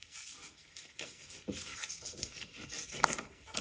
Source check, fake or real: fake